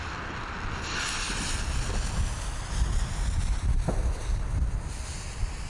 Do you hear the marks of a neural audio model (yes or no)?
no